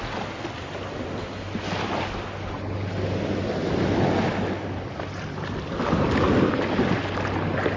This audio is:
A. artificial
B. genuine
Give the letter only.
B